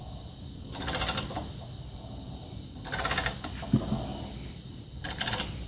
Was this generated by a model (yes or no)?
no